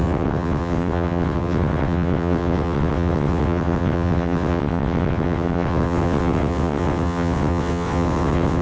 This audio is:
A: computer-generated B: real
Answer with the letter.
A